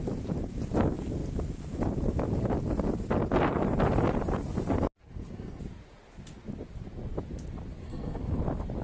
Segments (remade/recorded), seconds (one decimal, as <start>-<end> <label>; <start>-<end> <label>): 0.0-5.0 recorded; 5.0-5.6 remade; 5.6-7.8 recorded; 7.8-8.4 remade; 8.4-8.8 recorded